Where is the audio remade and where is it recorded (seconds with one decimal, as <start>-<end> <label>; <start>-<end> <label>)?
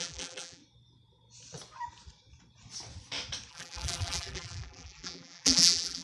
0.0-0.6 remade; 0.6-3.5 recorded; 3.5-6.0 remade